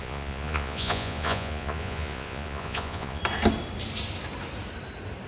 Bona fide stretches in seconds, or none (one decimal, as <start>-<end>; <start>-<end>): 3.2-5.3